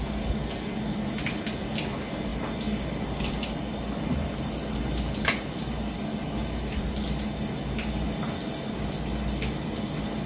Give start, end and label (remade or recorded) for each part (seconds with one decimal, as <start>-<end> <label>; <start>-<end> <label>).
0.0-10.3 recorded